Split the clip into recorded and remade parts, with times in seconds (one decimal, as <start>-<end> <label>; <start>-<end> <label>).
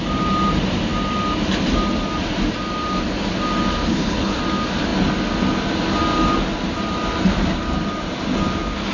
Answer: 0.0-3.9 recorded; 3.9-4.4 remade; 4.4-8.9 recorded